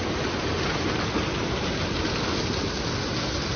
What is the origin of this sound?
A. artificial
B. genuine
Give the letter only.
B